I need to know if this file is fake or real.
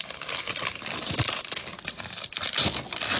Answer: real